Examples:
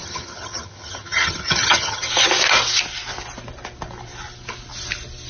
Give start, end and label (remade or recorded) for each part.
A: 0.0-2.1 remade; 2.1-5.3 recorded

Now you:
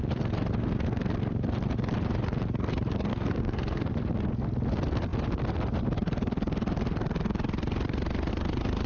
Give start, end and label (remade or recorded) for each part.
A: 0.0-3.1 recorded; 3.1-3.9 remade; 3.9-8.9 recorded

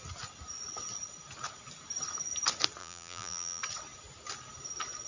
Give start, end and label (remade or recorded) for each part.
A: 0.0-2.8 recorded; 2.8-3.6 remade; 3.6-5.1 recorded

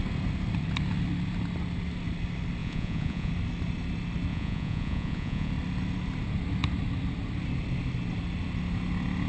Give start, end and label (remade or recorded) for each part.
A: 0.0-2.6 recorded; 2.6-3.3 remade; 3.3-4.3 recorded; 4.3-5.5 remade; 5.5-9.3 recorded